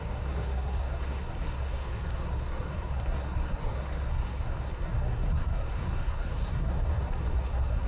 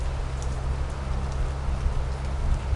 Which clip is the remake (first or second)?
first